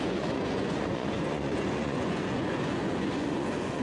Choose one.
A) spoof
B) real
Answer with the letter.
A